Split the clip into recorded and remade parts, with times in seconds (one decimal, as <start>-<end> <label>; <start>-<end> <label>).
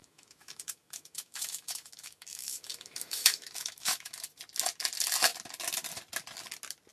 0.0-4.1 remade; 4.1-6.9 recorded